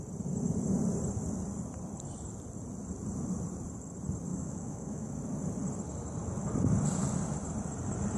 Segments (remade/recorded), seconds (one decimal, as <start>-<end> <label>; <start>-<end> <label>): 0.0-4.3 recorded; 4.3-5.1 remade; 5.1-8.2 recorded